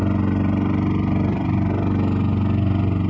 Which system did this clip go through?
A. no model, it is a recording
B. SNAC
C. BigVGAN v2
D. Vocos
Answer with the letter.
A